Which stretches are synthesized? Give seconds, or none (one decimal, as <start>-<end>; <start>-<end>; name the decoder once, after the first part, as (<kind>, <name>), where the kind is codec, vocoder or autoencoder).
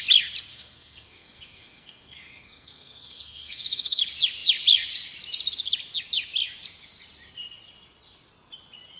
0.5-4.0 (codec, SNAC)